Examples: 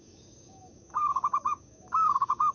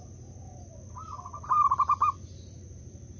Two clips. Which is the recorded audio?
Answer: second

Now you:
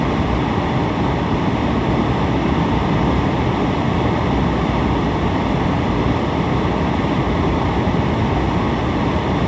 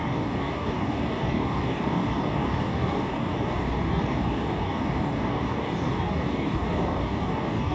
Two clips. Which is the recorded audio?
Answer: first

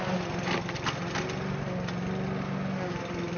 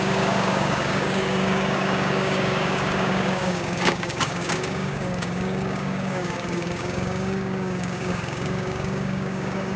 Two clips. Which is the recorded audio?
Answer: first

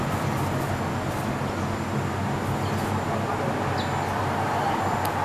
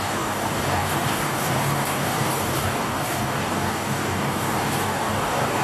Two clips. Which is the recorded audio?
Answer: first